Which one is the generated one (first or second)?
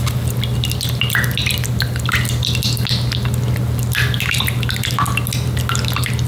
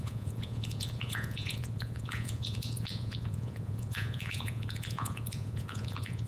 second